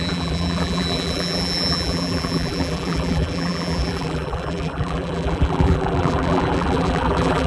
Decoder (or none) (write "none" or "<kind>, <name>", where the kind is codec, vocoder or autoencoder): vocoder, BigVGAN v2